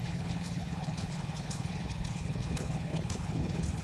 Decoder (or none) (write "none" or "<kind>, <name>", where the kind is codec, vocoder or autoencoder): codec, HILCodec